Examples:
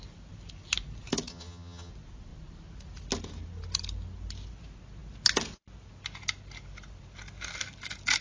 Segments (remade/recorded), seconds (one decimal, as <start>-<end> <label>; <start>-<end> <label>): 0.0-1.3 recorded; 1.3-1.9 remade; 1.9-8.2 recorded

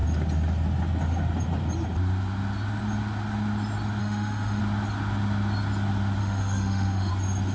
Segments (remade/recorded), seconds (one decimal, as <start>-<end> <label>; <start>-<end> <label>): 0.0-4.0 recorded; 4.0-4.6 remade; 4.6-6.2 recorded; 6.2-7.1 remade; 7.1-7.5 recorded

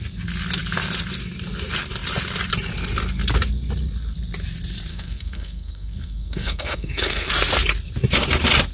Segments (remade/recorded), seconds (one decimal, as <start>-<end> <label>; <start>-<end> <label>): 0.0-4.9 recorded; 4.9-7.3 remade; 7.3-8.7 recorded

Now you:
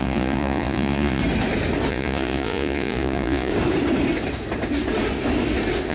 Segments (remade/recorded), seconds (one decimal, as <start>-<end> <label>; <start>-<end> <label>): 0.0-1.2 remade; 1.2-1.9 recorded; 1.9-3.5 remade; 3.5-5.9 recorded

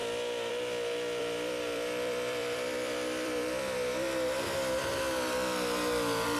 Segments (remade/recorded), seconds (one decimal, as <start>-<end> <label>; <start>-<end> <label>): 0.0-0.5 remade; 0.5-1.2 recorded; 1.2-5.0 remade; 5.0-6.4 recorded

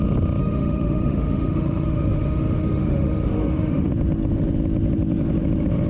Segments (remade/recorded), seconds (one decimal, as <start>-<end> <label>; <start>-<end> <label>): 0.0-0.4 recorded; 0.4-3.9 remade; 3.9-5.9 recorded

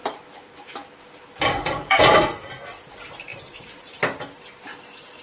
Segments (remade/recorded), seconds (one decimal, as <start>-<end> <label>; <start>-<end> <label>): 0.0-2.0 remade; 2.0-3.3 recorded; 3.3-4.2 remade; 4.2-5.2 recorded